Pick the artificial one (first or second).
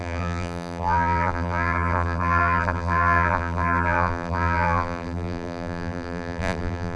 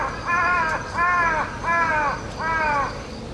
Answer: first